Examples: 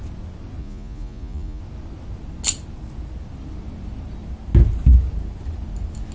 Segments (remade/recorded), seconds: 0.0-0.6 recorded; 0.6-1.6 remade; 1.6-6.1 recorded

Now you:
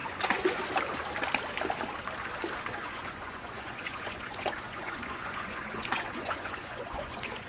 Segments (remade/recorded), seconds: 0.0-0.6 remade; 0.6-2.7 recorded; 2.7-7.5 remade

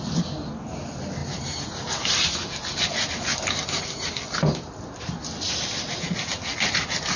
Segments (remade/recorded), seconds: 0.0-7.2 recorded

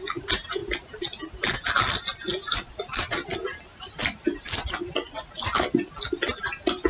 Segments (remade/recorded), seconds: 0.0-6.9 recorded

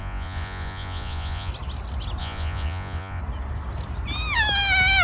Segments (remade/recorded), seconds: 0.0-1.5 remade; 1.5-2.2 recorded; 2.2-3.2 remade; 3.2-5.0 recorded

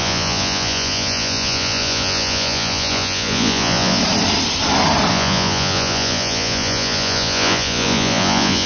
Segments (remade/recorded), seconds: 0.0-4.0 remade; 4.0-5.1 recorded; 5.1-8.7 remade

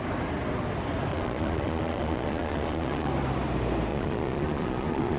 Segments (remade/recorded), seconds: 0.0-1.1 recorded; 1.1-3.1 remade; 3.1-3.9 recorded; 3.9-5.2 remade

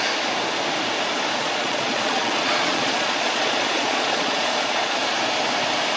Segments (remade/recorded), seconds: 0.0-1.4 recorded; 1.4-5.0 remade; 5.0-6.0 recorded